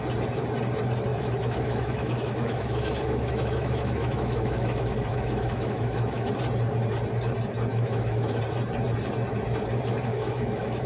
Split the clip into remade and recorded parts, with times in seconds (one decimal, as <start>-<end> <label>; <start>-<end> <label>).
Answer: 0.0-1.1 recorded; 1.1-6.3 remade; 6.3-7.7 recorded; 7.7-8.4 remade; 8.4-10.1 recorded; 10.1-10.9 remade